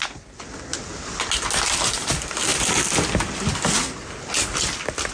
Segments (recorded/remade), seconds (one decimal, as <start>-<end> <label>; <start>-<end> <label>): 0.0-5.1 recorded